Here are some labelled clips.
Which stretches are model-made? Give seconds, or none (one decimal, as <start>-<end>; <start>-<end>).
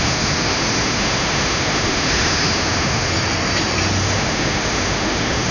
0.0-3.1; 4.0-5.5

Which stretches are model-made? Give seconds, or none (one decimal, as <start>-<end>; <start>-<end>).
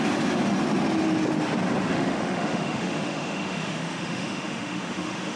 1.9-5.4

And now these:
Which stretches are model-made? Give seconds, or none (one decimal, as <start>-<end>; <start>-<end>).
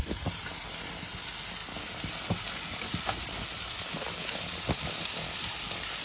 none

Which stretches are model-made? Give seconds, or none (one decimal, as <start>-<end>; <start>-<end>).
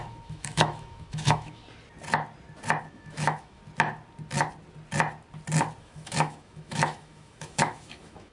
0.0-1.6; 2.9-3.6; 5.8-8.3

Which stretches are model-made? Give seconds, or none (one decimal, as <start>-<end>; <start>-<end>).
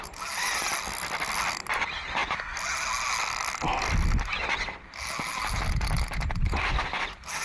none